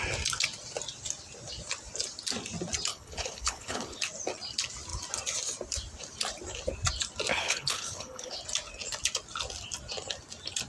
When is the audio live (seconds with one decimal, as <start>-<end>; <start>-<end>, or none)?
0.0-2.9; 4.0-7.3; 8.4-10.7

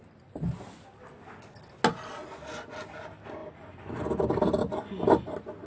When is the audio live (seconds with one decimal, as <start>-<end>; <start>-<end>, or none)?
0.0-5.7

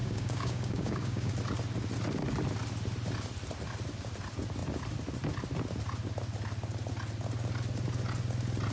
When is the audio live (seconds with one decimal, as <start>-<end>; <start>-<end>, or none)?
1.3-8.7